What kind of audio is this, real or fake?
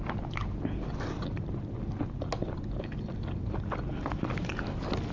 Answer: real